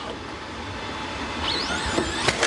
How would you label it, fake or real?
real